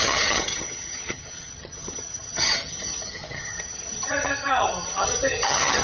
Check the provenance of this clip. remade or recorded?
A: remade